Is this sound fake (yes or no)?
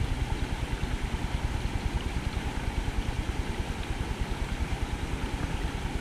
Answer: no